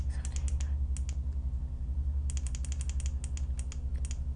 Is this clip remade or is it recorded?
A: recorded